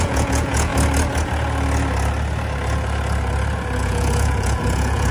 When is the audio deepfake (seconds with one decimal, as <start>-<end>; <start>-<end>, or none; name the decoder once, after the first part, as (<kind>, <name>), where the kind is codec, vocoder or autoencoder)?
0.0-0.7 (vocoder, Vocos); 3.8-5.1